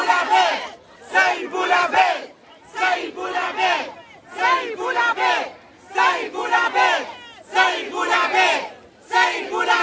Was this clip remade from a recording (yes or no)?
no